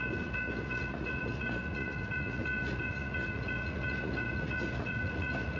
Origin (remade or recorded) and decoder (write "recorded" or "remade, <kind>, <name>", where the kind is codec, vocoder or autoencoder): remade, vocoder, Vocos